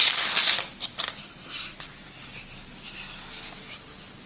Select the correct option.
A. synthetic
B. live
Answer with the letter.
B